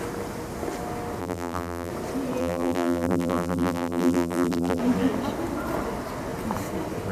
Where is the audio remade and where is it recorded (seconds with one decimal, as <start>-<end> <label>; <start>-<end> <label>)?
0.0-1.2 recorded; 1.2-1.9 remade; 1.9-2.4 recorded; 2.4-4.8 remade; 4.8-7.1 recorded